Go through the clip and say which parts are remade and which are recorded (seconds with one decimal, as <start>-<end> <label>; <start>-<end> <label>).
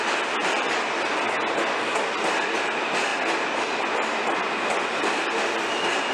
0.0-0.4 recorded; 0.4-1.2 remade; 1.2-6.1 recorded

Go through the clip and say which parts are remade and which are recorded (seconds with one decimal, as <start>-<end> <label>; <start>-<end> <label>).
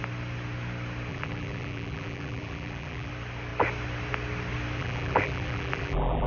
0.0-1.1 recorded; 1.1-3.1 remade; 3.1-4.8 recorded; 4.8-6.3 remade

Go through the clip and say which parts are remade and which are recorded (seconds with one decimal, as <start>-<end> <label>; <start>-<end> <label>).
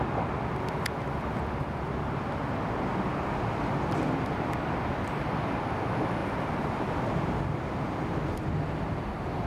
0.0-6.2 recorded; 6.2-7.0 remade; 7.0-9.5 recorded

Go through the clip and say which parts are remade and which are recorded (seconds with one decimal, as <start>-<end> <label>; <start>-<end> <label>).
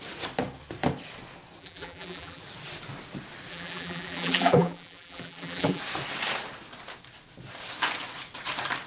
0.0-1.6 recorded; 1.6-2.4 remade; 2.4-3.5 recorded; 3.5-5.8 remade; 5.8-8.9 recorded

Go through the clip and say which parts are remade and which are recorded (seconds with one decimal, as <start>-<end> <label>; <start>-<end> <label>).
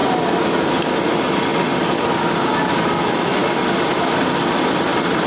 0.0-5.3 recorded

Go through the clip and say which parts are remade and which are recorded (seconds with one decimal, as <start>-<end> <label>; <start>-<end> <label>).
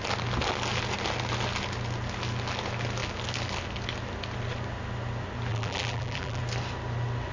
0.0-5.5 recorded; 5.5-6.4 remade; 6.4-7.3 recorded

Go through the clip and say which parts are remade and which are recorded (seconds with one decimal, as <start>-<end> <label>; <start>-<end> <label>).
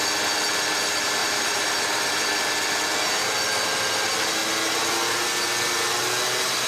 0.0-1.2 recorded; 1.2-2.3 remade; 2.3-6.7 recorded